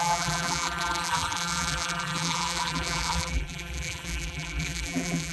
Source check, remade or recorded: remade